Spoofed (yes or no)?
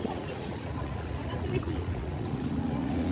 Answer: yes